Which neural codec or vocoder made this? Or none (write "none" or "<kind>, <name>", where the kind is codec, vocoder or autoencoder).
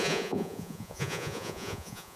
vocoder, Vocos